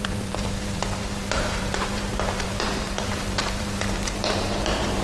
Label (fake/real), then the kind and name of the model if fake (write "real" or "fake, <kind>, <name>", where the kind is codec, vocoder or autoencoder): fake, vocoder, BigVGAN v2